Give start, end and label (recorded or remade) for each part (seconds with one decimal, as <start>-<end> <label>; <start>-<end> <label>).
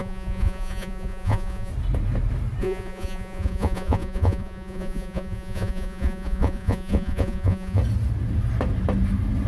0.0-1.7 remade; 1.7-2.6 recorded; 2.6-7.8 remade; 7.8-9.5 recorded